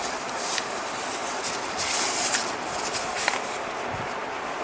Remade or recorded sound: recorded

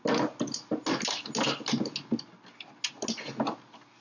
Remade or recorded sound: recorded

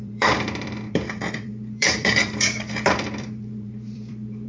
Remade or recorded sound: remade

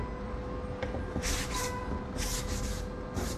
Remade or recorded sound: recorded